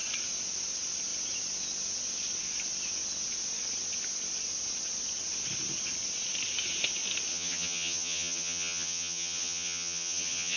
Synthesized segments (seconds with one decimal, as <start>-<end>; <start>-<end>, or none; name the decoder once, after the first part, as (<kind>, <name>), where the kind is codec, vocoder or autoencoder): 7.3-10.6 (vocoder, HiFi-GAN)